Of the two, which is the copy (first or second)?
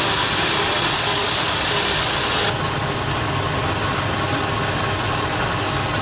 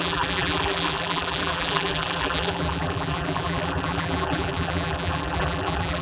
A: second